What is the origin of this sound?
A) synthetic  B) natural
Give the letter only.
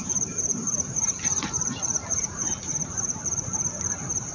A